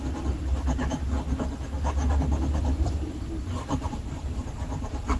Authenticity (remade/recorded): recorded